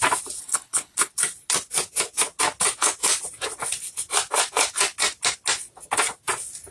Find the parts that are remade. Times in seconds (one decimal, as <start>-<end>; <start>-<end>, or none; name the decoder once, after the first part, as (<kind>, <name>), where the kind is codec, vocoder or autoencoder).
0.4-1.1 (codec, HILCodec)